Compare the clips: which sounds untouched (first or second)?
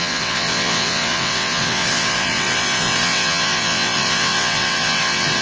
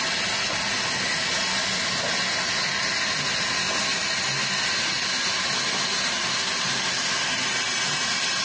second